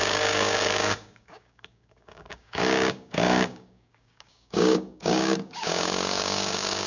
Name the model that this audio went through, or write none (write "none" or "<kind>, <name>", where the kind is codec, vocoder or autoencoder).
codec, DAC